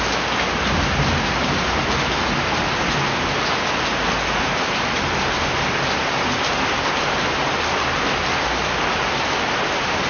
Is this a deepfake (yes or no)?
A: no